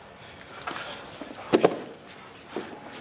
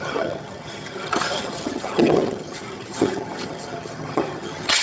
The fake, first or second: second